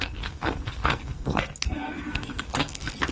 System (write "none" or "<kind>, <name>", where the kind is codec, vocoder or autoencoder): codec, SNAC